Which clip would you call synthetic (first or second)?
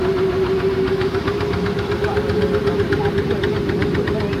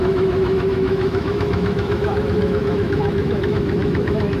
second